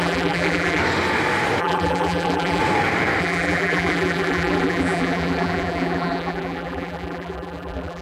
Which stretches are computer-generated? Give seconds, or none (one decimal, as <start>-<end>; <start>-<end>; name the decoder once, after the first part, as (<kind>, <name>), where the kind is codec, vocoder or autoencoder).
0.0-0.8 (vocoder, BigVGAN v2); 1.6-2.6; 3.2-8.0